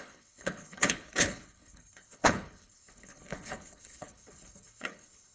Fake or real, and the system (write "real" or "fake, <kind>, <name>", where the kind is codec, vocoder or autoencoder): fake, codec, HILCodec